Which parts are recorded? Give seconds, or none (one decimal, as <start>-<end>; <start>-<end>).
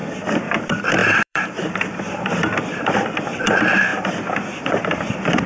0.0-1.0; 3.5-3.9; 4.8-5.5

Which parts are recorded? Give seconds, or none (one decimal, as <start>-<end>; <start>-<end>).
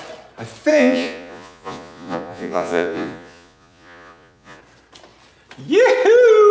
0.0-0.7; 4.6-6.5